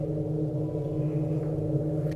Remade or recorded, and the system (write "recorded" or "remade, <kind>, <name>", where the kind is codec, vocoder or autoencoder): recorded